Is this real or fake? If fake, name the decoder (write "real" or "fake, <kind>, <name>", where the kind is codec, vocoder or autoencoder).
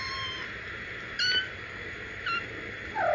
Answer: real